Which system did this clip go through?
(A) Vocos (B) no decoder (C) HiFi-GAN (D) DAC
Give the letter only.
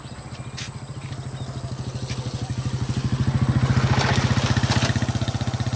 B